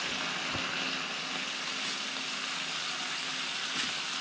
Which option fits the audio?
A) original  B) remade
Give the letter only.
A